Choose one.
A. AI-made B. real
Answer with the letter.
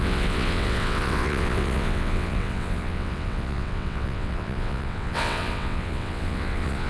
A